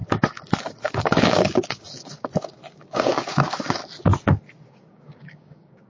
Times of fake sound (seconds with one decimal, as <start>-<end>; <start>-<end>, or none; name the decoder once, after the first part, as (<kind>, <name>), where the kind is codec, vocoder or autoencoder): 0.6-3.8 (codec, DAC); 4.6-5.9